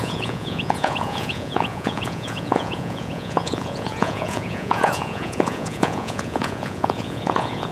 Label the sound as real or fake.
fake